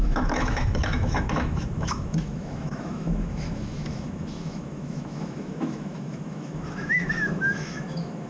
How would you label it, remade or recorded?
remade